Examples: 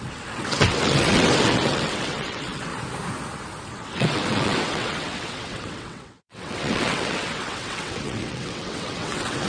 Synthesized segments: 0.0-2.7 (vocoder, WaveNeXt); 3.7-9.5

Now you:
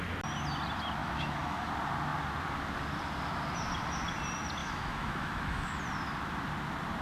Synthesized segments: 1.0-1.7 (autoencoder, DAC-VAE); 4.6-5.8

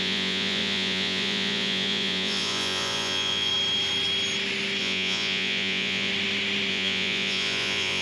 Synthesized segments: 0.0-3.5 (vocoder, Vocos); 4.8-6.1; 6.7-8.0

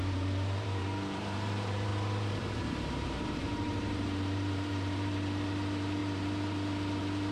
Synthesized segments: 0.0-7.3 (vocoder, BigVGAN v2)